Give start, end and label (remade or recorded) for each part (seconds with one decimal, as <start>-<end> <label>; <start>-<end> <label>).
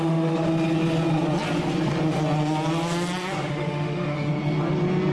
0.0-0.4 remade; 0.4-3.5 recorded; 3.5-4.3 remade; 4.3-5.1 recorded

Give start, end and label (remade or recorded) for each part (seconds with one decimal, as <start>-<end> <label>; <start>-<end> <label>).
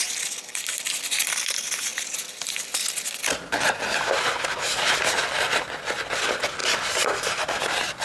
0.0-8.0 recorded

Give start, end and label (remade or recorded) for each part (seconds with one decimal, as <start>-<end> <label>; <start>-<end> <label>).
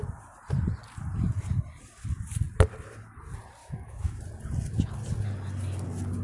0.0-3.6 recorded; 3.6-4.2 remade; 4.2-6.2 recorded